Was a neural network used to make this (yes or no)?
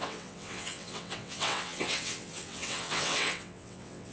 yes